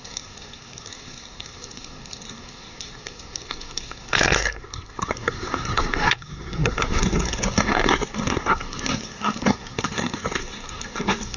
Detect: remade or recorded remade